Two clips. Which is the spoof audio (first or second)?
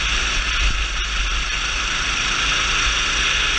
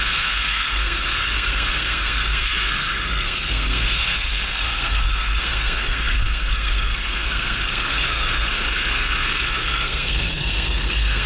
second